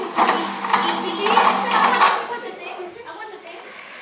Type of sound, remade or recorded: recorded